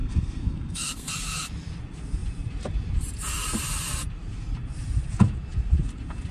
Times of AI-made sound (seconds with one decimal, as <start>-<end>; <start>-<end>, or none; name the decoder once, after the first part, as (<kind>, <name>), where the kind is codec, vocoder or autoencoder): 0.0-1.1 (codec, SNAC)